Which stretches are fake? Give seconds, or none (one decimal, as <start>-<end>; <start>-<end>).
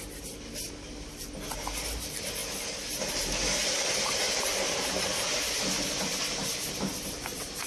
none